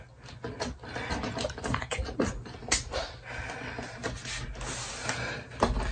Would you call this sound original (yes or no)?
yes